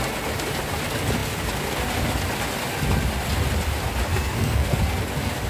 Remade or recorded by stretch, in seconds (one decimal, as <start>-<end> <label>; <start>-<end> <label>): 0.0-4.1 recorded; 4.1-4.8 remade; 4.8-5.5 recorded